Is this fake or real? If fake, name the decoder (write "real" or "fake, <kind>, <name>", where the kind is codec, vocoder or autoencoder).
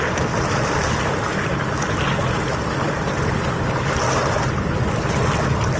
real